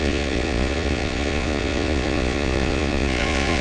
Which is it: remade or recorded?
remade